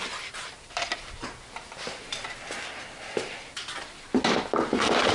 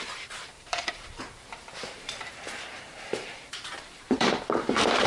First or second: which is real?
first